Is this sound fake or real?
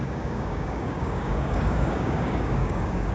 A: fake